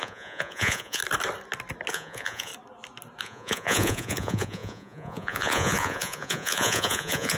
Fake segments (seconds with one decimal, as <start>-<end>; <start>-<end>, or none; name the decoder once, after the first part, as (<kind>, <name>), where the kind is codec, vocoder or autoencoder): 0.0-1.0 (vocoder, Vocos); 1.9-2.5; 3.2-7.4